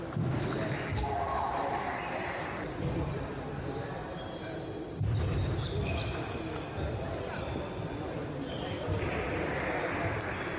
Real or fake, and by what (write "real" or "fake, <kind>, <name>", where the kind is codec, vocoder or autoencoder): real